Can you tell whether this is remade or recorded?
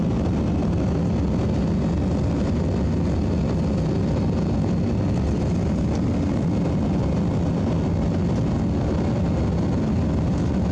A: recorded